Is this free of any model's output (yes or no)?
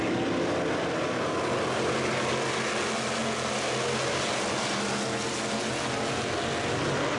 yes